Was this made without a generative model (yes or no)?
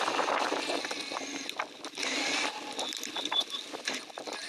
yes